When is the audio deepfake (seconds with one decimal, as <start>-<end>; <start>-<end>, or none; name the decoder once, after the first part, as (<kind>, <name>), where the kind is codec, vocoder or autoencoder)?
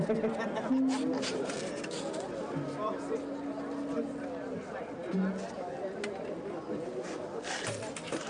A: none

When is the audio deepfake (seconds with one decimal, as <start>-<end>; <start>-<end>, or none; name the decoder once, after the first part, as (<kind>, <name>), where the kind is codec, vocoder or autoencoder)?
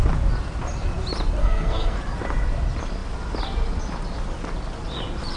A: 1.4-2.0 (codec, SNAC)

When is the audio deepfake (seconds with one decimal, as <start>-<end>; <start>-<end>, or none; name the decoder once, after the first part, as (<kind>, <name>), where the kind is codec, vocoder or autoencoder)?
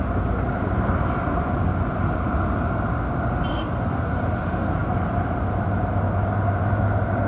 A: 3.5-4.1 (codec, SNAC)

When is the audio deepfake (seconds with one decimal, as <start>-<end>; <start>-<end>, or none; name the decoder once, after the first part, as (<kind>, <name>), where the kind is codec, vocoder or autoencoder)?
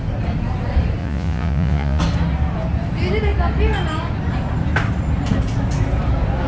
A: 1.0-2.0 (vocoder, Vocos)